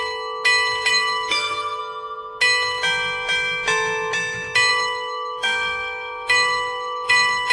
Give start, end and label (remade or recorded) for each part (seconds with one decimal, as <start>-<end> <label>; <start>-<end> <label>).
0.0-0.9 recorded; 0.9-1.8 remade; 1.8-4.7 recorded; 4.7-7.5 remade